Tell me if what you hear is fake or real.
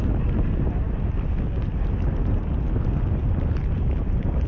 real